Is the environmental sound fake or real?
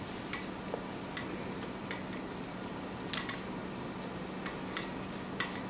real